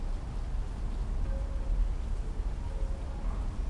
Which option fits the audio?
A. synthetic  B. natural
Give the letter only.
B